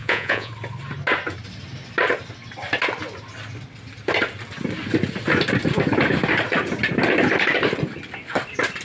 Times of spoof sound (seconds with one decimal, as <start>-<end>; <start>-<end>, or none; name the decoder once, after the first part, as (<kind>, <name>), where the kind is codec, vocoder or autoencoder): 0.0-0.5 (vocoder, Vocos)